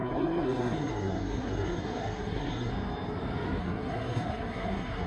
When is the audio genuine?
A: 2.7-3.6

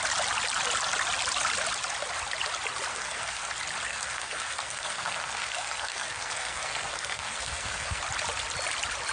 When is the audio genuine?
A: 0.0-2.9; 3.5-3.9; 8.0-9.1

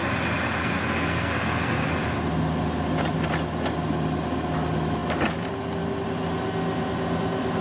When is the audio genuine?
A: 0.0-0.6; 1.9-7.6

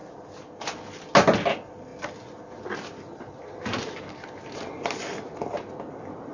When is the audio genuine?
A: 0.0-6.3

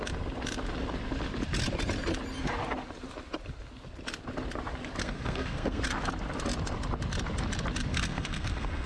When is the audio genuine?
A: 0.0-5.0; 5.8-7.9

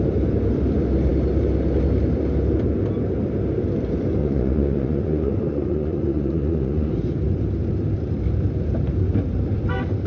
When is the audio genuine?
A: 0.0-4.2; 6.9-10.1